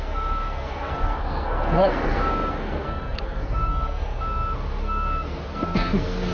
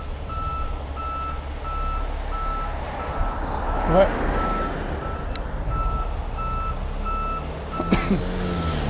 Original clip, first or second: second